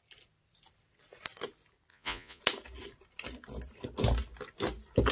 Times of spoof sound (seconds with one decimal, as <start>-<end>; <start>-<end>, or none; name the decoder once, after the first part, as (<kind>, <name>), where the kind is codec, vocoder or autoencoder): 1.9-2.4 (vocoder, Vocos)